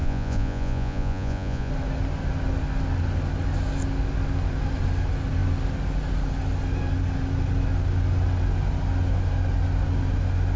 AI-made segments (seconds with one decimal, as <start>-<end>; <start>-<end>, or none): 0.0-1.7

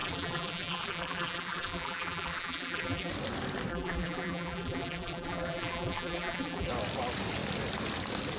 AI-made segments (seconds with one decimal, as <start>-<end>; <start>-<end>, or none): 0.0-3.1; 3.7-6.7

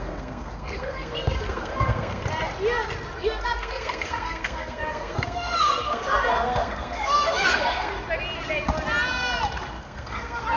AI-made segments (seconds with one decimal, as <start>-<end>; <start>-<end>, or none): 0.0-2.2; 3.2-7.9; 9.8-10.6

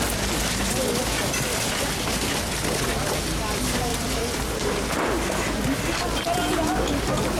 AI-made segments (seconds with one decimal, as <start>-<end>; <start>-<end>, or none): 3.9-4.6

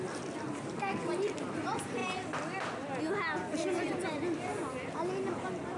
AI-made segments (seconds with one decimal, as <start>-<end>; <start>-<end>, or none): none

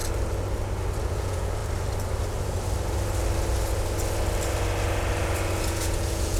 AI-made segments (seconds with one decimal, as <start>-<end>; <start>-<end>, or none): 1.0-1.6; 5.2-6.4